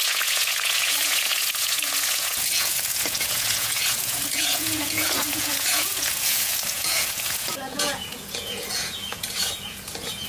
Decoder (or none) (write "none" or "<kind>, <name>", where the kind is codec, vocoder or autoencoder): vocoder, Vocos